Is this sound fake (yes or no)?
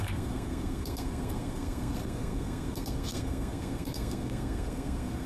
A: yes